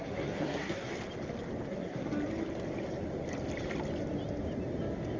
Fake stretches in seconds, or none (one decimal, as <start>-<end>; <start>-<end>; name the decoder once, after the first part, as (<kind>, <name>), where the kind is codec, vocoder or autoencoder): 0.0-0.9 (codec, SNAC); 1.7-2.1